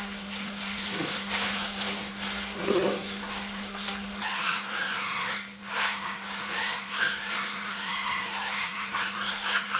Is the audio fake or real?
fake